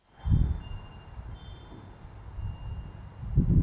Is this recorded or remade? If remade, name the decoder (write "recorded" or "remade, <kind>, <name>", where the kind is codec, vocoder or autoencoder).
recorded